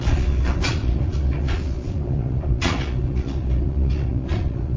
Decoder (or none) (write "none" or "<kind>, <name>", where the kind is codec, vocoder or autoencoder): vocoder, Vocos